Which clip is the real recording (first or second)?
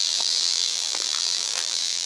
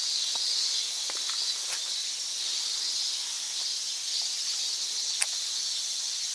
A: second